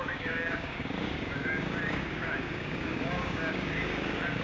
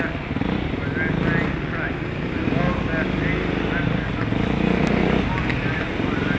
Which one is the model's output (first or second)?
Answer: first